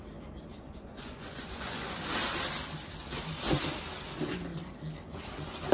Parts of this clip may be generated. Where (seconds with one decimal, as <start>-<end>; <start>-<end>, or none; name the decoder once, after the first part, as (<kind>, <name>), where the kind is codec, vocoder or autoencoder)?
0.5-2.0 (vocoder, Vocos)